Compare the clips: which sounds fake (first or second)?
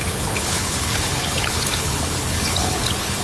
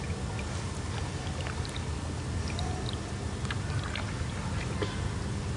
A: first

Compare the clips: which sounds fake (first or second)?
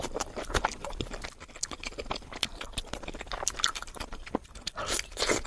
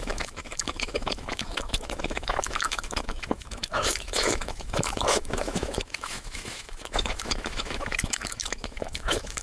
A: second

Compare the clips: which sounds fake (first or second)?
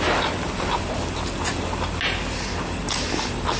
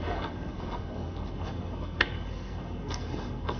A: second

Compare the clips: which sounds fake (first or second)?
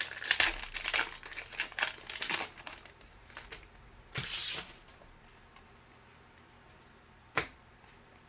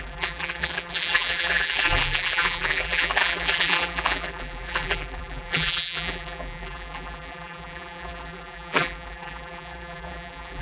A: second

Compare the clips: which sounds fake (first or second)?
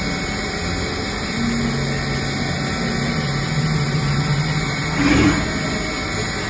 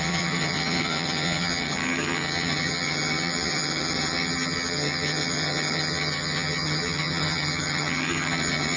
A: second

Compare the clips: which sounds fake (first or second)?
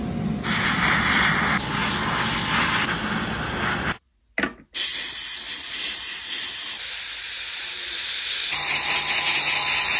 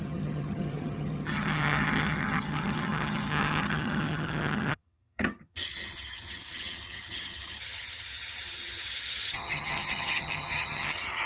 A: second